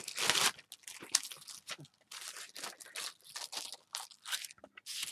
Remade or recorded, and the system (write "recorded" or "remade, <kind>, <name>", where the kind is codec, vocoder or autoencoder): recorded